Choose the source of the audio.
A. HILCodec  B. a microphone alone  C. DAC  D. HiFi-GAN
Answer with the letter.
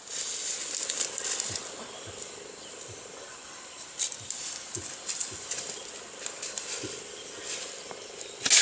B